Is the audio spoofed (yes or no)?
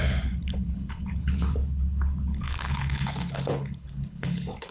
yes